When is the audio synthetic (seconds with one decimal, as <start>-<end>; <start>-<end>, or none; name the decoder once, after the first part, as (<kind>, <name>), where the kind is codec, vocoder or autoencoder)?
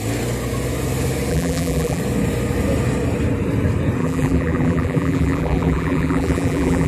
1.3-2.0 (vocoder, BigVGAN v2); 4.0-6.9